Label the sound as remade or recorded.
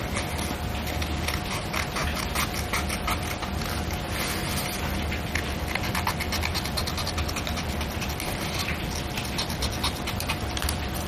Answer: recorded